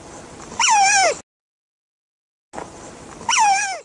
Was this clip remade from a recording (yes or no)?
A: no